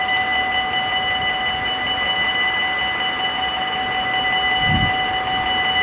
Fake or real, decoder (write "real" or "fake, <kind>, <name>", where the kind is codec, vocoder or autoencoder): real